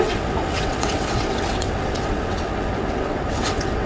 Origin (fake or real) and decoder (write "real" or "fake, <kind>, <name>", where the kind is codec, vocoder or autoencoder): fake, vocoder, WaveNeXt